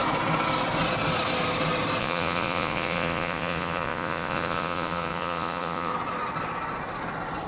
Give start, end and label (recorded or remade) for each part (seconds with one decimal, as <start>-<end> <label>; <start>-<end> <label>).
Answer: 0.0-2.0 recorded; 2.0-5.9 remade; 5.9-7.5 recorded